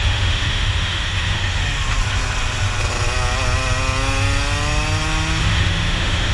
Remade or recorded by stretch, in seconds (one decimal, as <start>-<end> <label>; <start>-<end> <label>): 0.0-1.6 remade; 1.6-5.4 recorded; 5.4-6.3 remade